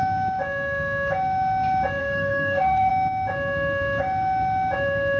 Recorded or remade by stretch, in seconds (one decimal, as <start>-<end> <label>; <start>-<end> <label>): 0.0-2.0 recorded; 2.0-2.9 remade; 2.9-5.2 recorded